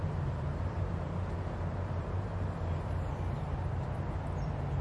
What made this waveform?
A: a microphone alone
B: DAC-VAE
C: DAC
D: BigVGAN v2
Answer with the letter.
D